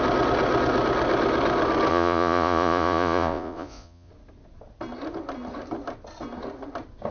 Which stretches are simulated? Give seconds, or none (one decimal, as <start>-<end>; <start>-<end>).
1.9-4.1